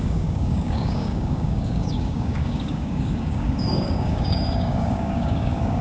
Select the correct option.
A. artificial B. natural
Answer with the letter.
A